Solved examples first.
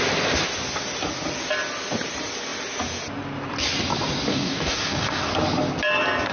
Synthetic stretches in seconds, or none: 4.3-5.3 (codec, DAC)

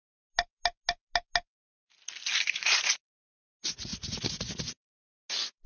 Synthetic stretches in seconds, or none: none

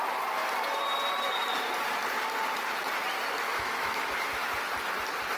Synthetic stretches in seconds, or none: 3.5-4.5 (autoencoder, DAC-VAE)

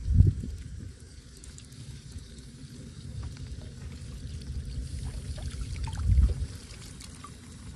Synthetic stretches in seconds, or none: 0.0-4.2 (codec, DAC)

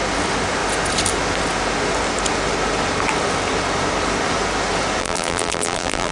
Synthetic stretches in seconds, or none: 5.0-6.1 (vocoder, BigVGAN v2)

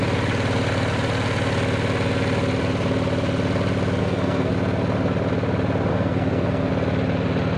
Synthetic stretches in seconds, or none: 4.0-4.5 (codec, SNAC); 5.9-6.7